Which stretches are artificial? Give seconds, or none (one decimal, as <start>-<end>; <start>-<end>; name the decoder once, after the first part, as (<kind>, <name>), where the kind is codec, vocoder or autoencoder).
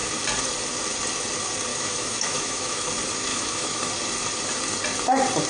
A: 1.7-2.9 (autoencoder, DAC-VAE); 3.3-3.9